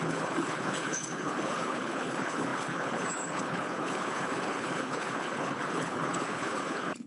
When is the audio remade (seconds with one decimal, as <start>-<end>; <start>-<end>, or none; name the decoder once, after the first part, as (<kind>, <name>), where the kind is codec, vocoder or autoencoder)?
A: 0.0-7.1 (codec, HILCodec)